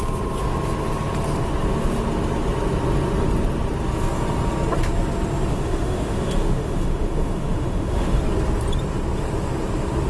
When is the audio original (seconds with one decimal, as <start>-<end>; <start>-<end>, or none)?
0.0-5.5; 8.2-10.1